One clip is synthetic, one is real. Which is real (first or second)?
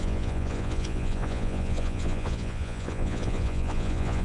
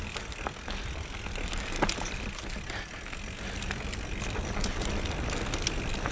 second